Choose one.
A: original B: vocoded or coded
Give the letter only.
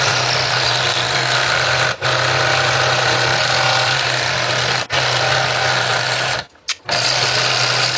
A